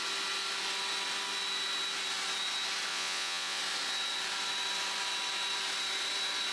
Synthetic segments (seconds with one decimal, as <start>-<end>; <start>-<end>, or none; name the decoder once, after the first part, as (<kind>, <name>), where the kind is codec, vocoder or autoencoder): 2.9-3.6 (vocoder, Vocos)